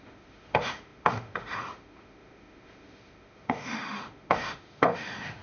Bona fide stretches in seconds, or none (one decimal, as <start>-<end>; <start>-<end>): none